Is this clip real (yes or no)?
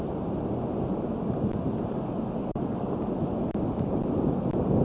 yes